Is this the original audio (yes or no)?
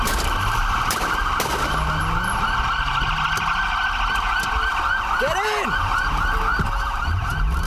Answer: yes